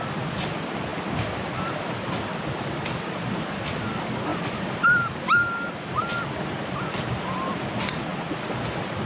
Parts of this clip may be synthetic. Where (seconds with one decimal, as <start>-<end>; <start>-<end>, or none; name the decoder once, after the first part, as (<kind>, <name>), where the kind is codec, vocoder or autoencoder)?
0.9-3.4 (vocoder, BigVGAN v2); 4.3-6.8; 8.1-9.1